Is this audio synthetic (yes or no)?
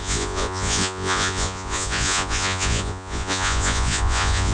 yes